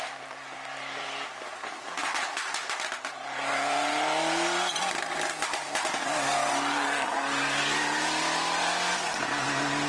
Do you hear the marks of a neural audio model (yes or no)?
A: no